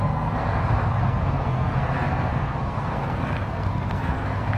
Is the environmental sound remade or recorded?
remade